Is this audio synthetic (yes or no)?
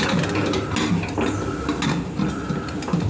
no